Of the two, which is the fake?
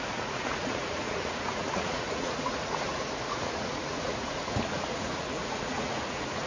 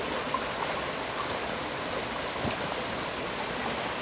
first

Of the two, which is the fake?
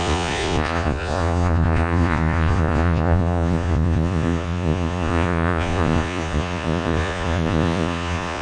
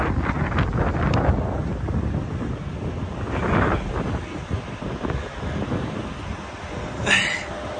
first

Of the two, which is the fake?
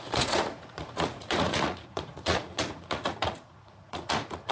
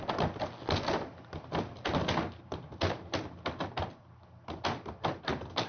first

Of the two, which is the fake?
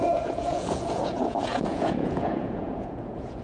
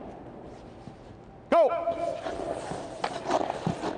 first